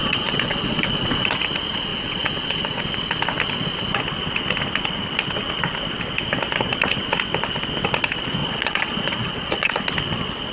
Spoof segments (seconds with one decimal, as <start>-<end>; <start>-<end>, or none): 0.0-1.3; 1.9-2.8; 8.4-9.7

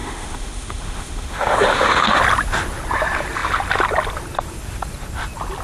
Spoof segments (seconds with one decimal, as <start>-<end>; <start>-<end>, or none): 0.0-2.2

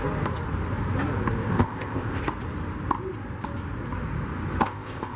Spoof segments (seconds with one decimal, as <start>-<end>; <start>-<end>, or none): 1.5-2.2; 4.6-5.2

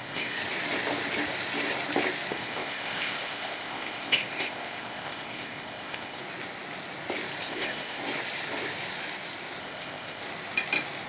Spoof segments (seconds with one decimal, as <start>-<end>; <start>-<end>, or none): 0.0-0.4; 2.3-6.2; 7.4-8.0; 9.6-10.2

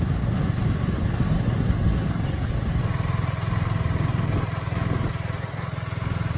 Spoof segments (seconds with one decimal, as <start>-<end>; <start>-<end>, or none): 1.9-2.5

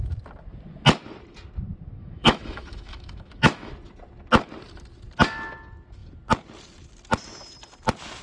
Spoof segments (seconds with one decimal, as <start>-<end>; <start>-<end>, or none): 2.0-3.7

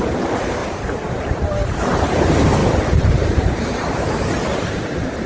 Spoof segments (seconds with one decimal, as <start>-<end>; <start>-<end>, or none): 0.0-5.3